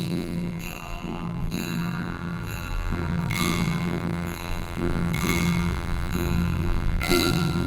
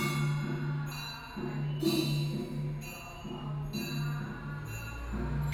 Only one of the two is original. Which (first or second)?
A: second